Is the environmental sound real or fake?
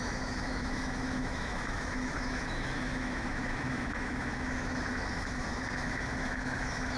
fake